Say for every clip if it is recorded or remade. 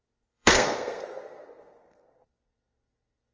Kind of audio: remade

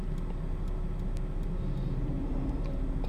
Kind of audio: recorded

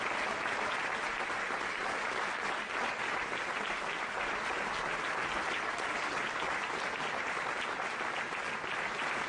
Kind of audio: recorded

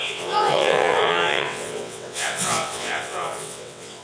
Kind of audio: remade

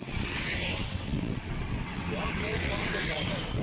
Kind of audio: remade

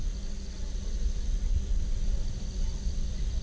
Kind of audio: recorded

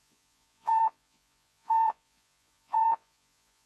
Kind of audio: remade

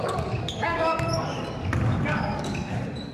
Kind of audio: remade